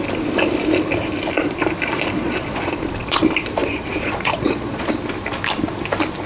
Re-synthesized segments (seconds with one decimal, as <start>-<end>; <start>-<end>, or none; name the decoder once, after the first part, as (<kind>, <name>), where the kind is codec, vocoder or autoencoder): 2.2-3.2 (vocoder, Vocos); 3.6-4.9